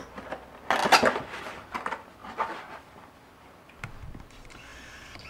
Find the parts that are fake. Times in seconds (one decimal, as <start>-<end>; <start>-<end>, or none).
none